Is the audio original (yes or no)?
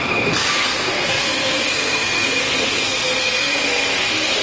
no